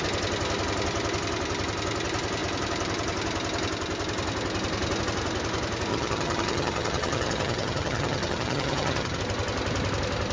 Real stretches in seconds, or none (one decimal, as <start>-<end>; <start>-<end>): 0.0-5.9; 9.2-10.3